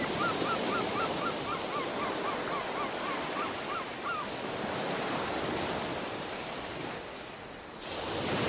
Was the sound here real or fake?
real